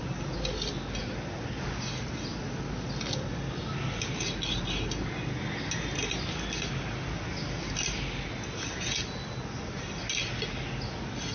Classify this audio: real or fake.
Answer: real